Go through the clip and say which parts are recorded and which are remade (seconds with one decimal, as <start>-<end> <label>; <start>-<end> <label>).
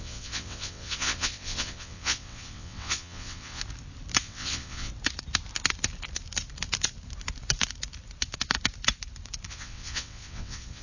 0.0-3.6 remade; 3.6-4.2 recorded; 4.2-4.9 remade; 4.9-9.5 recorded; 9.5-10.8 remade